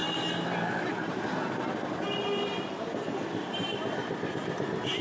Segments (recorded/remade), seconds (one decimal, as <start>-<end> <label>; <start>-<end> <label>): 0.0-0.7 recorded; 0.7-1.1 remade; 1.1-3.4 recorded; 3.4-5.0 remade